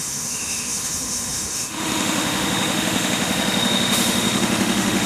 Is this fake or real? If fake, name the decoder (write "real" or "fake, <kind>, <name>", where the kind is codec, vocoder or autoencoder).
fake, autoencoder, DAC-VAE